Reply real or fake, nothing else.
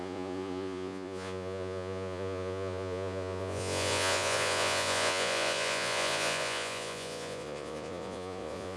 fake